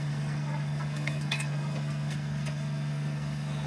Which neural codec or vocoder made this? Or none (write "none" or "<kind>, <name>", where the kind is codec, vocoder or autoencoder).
codec, SNAC